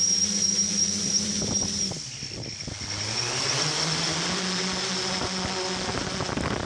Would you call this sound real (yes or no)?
yes